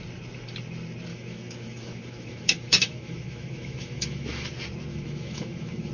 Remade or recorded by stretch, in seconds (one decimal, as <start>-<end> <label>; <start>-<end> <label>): 0.0-1.1 recorded; 1.1-4.5 remade; 4.5-4.9 recorded; 4.9-5.9 remade